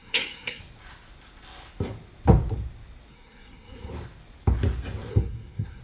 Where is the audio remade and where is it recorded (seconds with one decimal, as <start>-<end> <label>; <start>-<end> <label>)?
0.0-0.6 remade; 0.6-3.1 recorded; 3.1-3.9 remade; 3.9-5.1 recorded; 5.1-5.8 remade